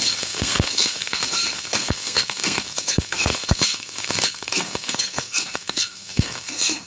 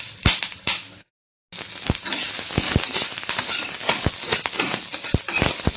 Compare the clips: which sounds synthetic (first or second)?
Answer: first